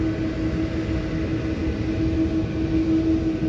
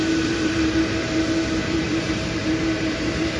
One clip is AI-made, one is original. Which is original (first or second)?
first